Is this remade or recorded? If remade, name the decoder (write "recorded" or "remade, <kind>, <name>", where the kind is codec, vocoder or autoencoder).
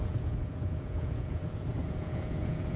remade, vocoder, Vocos